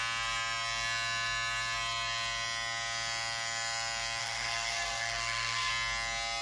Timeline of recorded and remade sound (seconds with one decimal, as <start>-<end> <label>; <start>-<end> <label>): 0.0-4.2 recorded; 4.2-5.7 remade; 5.7-6.4 recorded